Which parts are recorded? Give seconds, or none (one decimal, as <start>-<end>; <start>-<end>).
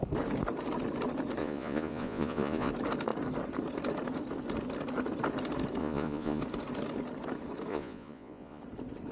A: 0.0-1.4; 2.7-5.8; 6.4-7.7; 8.6-9.1